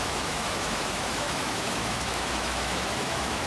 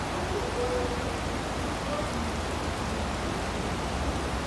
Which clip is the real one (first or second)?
second